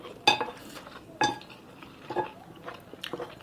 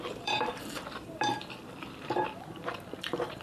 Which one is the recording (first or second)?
first